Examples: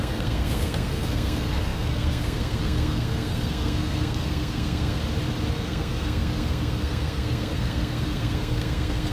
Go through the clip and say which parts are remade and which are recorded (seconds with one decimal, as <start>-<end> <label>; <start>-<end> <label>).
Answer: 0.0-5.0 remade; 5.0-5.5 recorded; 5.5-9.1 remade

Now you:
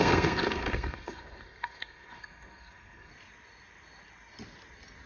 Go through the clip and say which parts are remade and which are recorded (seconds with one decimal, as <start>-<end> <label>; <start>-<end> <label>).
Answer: 0.0-3.1 remade; 3.1-5.1 recorded

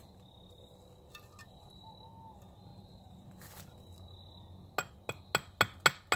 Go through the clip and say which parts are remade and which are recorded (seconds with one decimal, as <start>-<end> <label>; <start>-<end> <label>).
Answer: 0.0-6.2 recorded

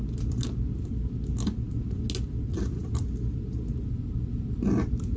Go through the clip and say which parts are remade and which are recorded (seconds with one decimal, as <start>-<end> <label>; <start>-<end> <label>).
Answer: 0.0-5.2 recorded

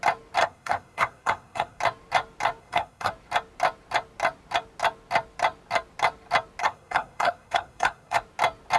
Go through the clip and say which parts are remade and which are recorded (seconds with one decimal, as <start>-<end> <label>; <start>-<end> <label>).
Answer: 0.0-0.4 recorded; 0.4-1.8 remade; 1.8-2.6 recorded; 2.6-3.1 remade; 3.1-6.6 recorded; 6.6-8.2 remade; 8.2-8.8 recorded

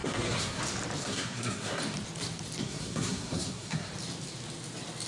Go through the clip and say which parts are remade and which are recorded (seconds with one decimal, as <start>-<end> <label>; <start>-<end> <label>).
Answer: 0.0-0.6 remade; 0.6-1.0 recorded; 1.0-1.8 remade; 1.8-2.6 recorded; 2.6-3.9 remade; 3.9-5.1 recorded

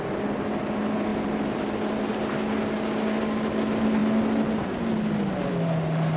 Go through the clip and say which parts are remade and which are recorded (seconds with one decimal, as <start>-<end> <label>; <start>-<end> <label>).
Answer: 0.0-6.2 recorded